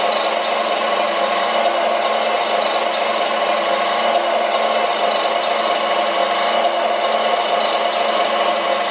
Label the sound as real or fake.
real